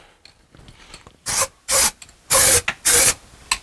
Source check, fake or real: real